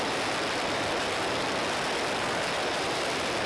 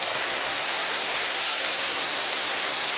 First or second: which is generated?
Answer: second